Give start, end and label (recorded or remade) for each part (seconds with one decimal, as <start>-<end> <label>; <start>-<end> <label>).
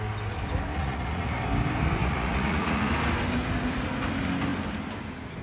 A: 0.0-0.7 recorded; 0.7-1.4 remade; 1.4-2.0 recorded; 2.0-2.9 remade; 2.9-5.4 recorded